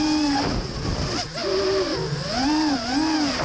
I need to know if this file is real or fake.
real